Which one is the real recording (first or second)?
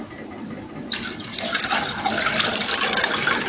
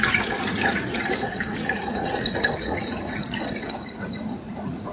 first